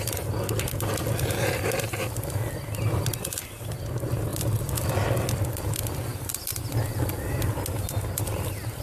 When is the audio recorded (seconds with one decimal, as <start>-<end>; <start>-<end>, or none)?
0.0-4.3; 4.9-6.1; 6.7-8.8